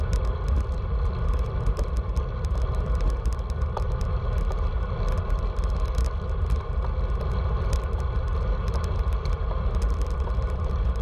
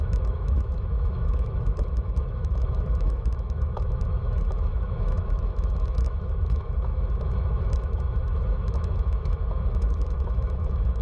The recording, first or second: first